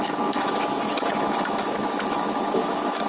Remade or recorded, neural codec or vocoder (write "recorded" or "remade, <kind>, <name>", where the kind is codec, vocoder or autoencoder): remade, autoencoder, DAC-VAE